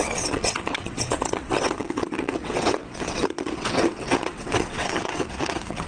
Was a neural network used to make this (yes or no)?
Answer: yes